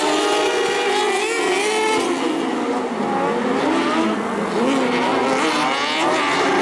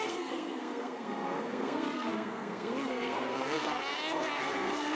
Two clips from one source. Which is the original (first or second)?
first